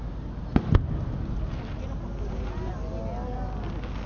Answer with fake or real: real